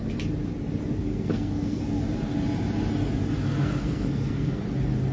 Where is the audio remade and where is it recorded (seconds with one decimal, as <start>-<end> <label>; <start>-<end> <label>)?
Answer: 0.0-1.0 recorded; 1.0-1.8 remade; 1.8-3.5 recorded; 3.5-4.6 remade; 4.6-5.1 recorded